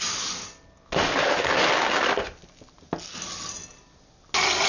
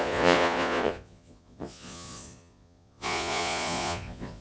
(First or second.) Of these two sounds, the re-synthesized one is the second